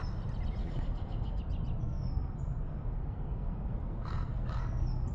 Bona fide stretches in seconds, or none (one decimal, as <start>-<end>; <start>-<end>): 0.0-0.6; 1.4-1.8